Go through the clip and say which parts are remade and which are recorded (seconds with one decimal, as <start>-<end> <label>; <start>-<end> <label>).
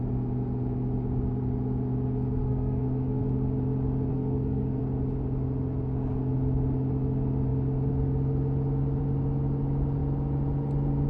0.0-2.4 recorded; 2.4-3.2 remade; 3.2-4.1 recorded; 4.1-4.8 remade; 4.8-11.1 recorded